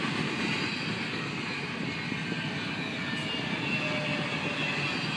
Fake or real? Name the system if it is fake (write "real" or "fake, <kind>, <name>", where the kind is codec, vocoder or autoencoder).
real